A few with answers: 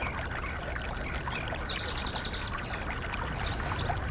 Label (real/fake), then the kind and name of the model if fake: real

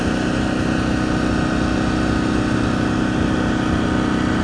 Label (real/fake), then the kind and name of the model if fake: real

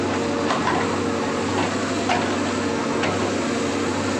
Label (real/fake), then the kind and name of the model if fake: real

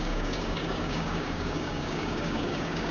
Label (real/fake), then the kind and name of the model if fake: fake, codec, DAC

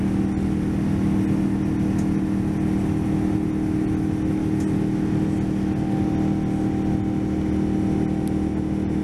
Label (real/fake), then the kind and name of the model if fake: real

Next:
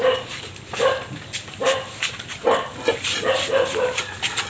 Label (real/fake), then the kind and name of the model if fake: real